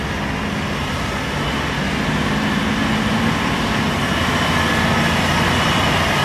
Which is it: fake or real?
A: real